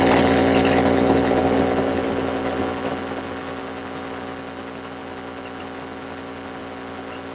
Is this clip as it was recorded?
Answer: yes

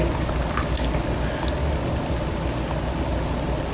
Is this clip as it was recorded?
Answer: yes